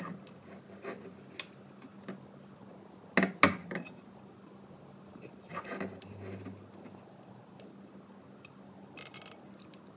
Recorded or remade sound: recorded